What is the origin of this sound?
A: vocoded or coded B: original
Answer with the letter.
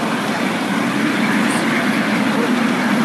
B